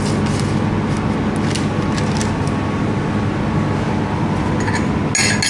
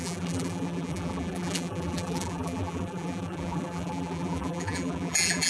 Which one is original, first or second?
first